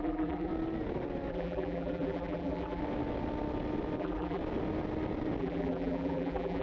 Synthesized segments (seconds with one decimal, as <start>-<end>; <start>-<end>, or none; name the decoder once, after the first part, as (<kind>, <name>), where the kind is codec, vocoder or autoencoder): 0.0-0.5 (vocoder, BigVGAN v2); 1.3-2.8; 4.0-4.4; 5.4-6.6

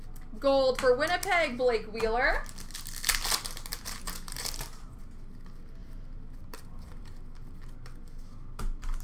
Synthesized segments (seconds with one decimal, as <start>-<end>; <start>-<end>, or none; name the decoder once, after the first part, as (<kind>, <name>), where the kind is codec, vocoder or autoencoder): 3.7-5.0 (vocoder, BigVGAN v2); 5.8-7.0

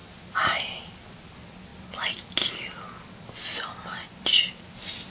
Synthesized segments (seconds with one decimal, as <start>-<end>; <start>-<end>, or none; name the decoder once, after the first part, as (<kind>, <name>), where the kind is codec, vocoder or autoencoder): none

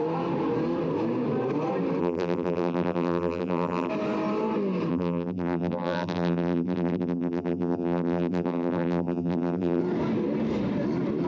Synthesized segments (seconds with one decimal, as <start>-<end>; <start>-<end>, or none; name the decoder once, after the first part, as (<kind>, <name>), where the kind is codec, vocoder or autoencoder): 2.0-3.9 (vocoder, BigVGAN v2); 4.9-9.8